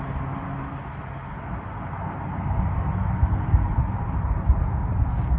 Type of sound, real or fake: real